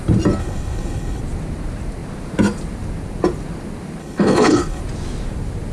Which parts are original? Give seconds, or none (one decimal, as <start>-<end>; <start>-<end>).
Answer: 0.0-0.4; 1.2-4.0; 4.8-5.7